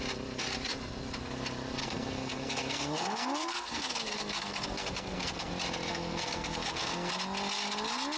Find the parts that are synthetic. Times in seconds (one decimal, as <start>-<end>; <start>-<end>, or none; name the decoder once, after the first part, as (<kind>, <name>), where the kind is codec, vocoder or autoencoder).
1.8-5.5 (codec, SNAC); 5.9-7.1